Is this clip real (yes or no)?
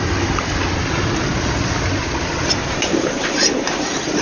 yes